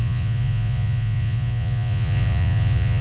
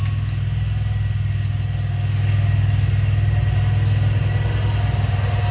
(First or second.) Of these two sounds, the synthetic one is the first